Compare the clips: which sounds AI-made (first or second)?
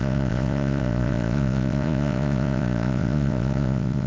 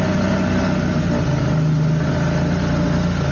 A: first